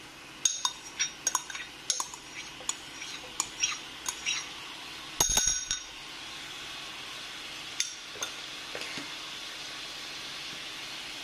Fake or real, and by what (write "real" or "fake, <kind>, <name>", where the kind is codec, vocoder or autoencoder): real